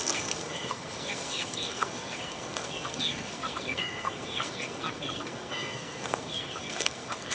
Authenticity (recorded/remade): remade